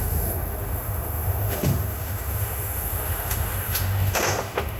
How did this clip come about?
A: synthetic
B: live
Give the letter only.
A